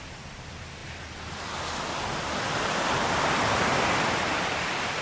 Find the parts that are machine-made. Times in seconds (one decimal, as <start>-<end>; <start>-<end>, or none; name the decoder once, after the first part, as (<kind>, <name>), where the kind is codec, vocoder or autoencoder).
3.7-4.5 (vocoder, BigVGAN v2)